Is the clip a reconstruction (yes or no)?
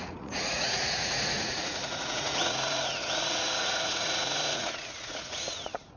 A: yes